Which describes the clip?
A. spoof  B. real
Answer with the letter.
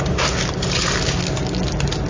B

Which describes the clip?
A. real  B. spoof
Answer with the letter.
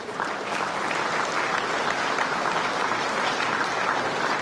A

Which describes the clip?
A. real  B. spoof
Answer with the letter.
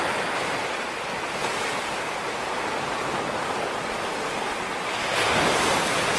A